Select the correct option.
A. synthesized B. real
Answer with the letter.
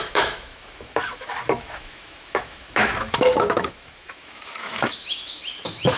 A